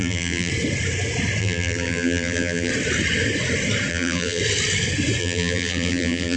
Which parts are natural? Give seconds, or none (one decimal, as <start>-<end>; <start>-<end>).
0.5-1.4; 2.7-3.9; 4.4-5.2